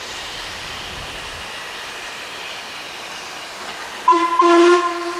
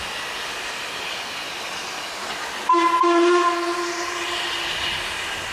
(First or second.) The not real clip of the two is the first